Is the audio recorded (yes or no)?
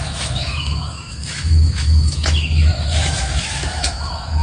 no